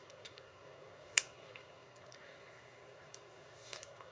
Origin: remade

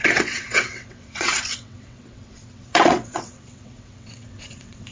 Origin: remade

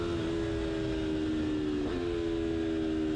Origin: recorded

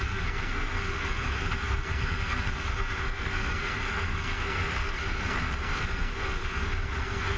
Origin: remade